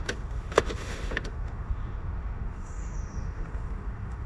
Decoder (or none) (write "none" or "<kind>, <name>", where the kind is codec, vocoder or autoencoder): autoencoder, DAC-VAE